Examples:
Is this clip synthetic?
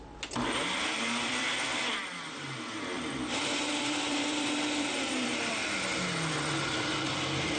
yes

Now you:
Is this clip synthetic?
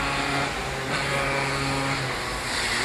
no